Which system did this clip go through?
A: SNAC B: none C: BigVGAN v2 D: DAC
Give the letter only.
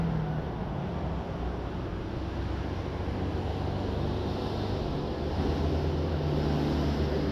B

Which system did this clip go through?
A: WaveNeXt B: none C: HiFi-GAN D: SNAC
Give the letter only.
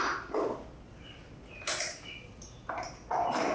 B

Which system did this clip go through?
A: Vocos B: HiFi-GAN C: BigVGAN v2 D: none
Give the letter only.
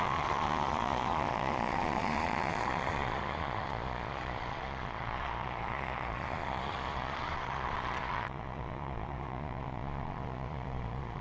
A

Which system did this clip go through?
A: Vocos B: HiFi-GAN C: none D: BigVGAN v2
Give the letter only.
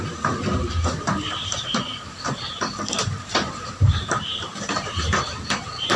D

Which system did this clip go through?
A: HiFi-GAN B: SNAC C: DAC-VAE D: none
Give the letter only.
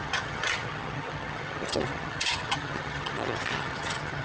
A